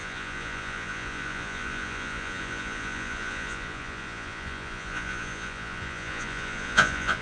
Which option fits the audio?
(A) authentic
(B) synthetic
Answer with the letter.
B